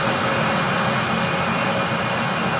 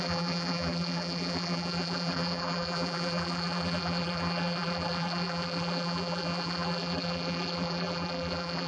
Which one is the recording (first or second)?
first